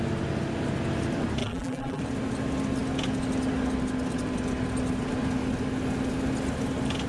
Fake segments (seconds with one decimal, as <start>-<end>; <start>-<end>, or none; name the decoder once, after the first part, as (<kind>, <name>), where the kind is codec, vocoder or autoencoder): 1.4-2.0 (vocoder, BigVGAN v2)